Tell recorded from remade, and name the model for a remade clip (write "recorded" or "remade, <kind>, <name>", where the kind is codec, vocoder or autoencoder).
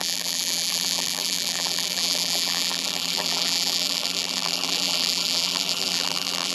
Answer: remade, vocoder, BigVGAN v2